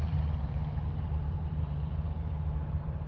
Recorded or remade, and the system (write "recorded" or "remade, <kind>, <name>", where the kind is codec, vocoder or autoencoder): remade, vocoder, BigVGAN v2